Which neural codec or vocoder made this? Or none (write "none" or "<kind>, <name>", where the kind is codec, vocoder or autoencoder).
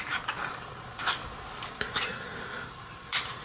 none